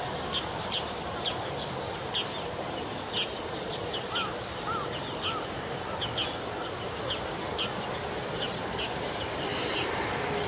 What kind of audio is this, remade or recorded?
recorded